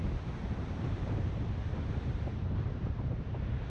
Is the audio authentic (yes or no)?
yes